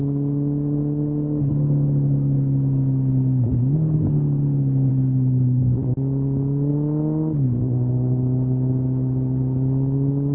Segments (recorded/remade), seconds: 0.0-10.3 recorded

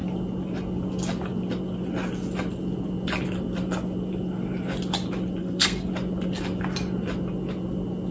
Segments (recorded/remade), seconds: 0.0-5.4 recorded; 5.4-5.9 remade; 5.9-8.1 recorded

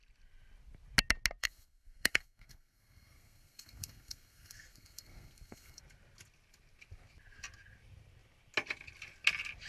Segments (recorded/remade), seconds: 0.0-1.4 recorded; 1.4-5.8 remade; 5.8-9.7 recorded

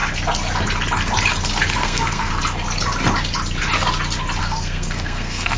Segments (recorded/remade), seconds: 0.0-1.8 recorded; 1.8-2.3 remade; 2.3-4.4 recorded; 4.4-5.6 remade

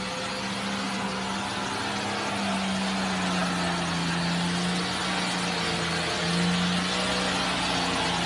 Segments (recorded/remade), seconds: 0.0-8.3 recorded

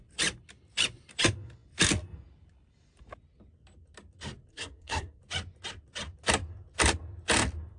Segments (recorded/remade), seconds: 0.0-4.5 recorded; 4.5-5.2 remade; 5.2-7.8 recorded

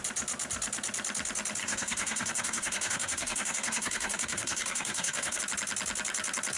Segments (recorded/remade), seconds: 0.0-1.6 recorded; 1.6-5.4 remade; 5.4-6.6 recorded

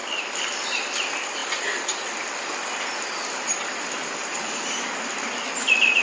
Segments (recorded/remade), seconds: 0.0-6.0 recorded